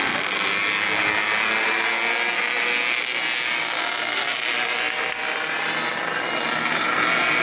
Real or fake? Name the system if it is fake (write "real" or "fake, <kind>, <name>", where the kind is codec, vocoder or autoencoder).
real